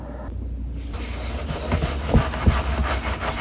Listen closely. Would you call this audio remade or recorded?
recorded